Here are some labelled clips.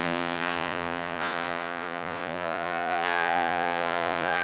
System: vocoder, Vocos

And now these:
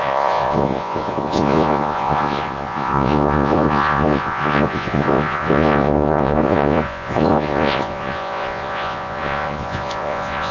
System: vocoder, Vocos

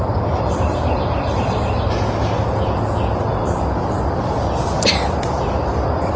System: none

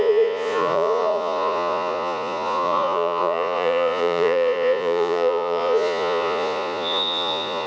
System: vocoder, Vocos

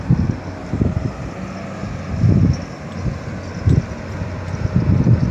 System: none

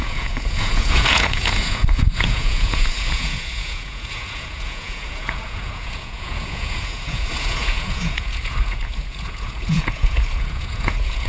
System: vocoder, Vocos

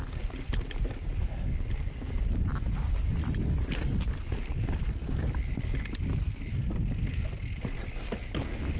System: none